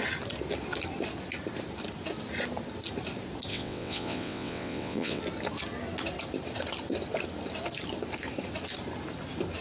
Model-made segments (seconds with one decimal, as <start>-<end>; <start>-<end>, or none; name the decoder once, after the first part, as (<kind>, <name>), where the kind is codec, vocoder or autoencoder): 3.5-5.2 (vocoder, WaveNeXt)